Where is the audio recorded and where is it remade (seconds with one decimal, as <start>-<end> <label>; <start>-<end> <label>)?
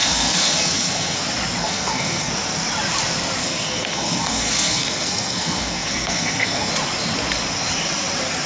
0.0-1.2 remade; 1.2-1.6 recorded; 1.6-2.3 remade; 2.3-3.4 recorded; 3.4-6.7 remade; 6.7-8.5 recorded